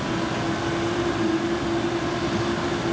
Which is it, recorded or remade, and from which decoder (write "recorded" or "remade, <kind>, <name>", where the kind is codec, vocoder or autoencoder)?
recorded